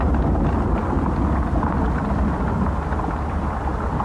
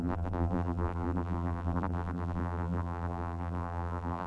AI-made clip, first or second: second